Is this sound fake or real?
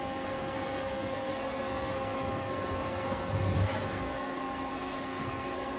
fake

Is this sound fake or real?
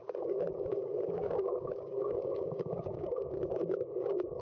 fake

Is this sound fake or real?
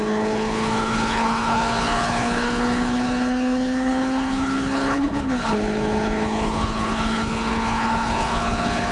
fake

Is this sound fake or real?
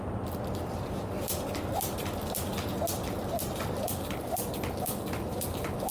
real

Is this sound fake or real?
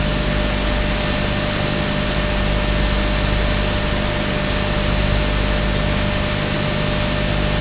real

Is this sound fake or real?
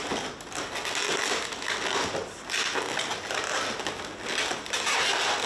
real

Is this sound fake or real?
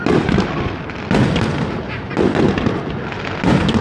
real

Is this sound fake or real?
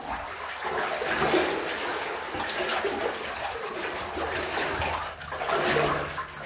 real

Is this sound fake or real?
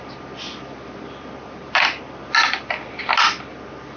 real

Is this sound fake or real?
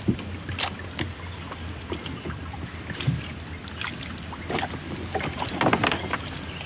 real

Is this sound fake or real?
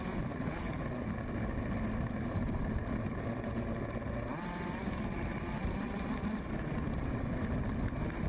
real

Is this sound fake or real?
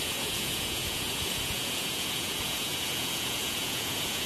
fake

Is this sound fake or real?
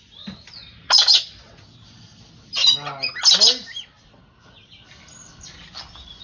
real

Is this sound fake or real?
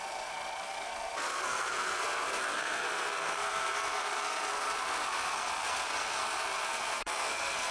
fake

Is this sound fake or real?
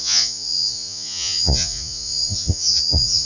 fake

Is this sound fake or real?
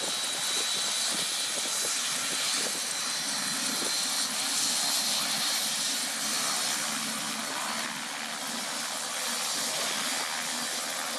real